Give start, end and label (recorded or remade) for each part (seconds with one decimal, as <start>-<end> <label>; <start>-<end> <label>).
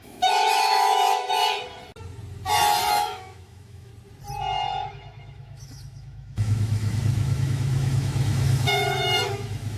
0.0-1.4 remade; 1.4-2.9 recorded; 2.9-3.9 remade; 3.9-4.9 recorded; 4.9-9.8 remade